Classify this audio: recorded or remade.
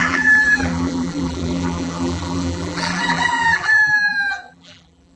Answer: remade